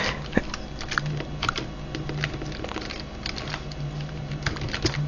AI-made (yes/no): no